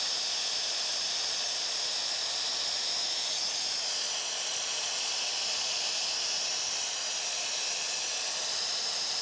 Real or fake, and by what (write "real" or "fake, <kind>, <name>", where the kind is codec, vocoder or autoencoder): real